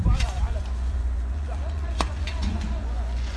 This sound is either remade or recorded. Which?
remade